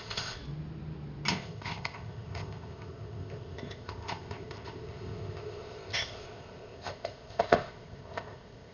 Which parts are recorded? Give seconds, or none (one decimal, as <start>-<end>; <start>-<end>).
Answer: 0.4-1.3